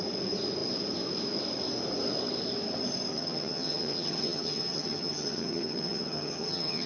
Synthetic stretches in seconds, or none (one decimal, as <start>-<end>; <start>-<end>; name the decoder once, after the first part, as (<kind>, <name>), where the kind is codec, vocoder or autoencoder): 3.1-6.9 (vocoder, HiFi-GAN)